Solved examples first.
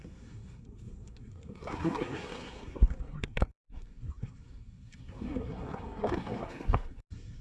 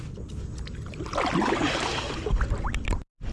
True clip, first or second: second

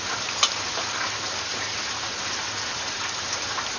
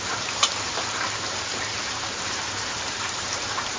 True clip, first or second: first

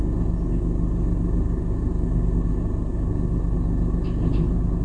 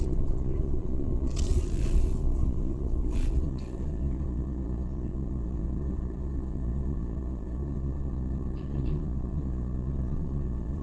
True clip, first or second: first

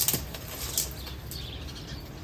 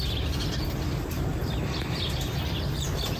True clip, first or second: first